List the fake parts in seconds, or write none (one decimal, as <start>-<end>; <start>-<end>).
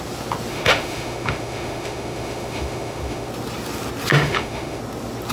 0.5-3.3; 4.1-4.8